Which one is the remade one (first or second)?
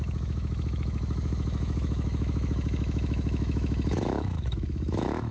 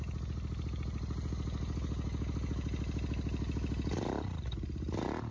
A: first